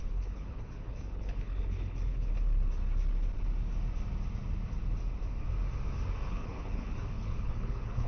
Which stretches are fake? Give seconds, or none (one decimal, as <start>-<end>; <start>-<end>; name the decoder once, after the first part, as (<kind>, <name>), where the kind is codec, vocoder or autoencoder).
0.0-2.3 (codec, HILCodec); 6.2-8.1